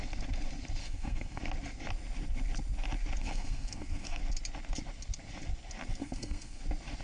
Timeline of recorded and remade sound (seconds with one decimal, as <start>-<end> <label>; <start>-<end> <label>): 0.0-0.8 recorded; 0.8-1.4 remade; 1.4-3.2 recorded; 3.2-4.2 remade; 4.2-6.0 recorded; 6.0-6.6 remade; 6.6-7.0 recorded